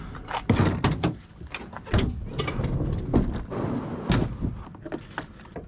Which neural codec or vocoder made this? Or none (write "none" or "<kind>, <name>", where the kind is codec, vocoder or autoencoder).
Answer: none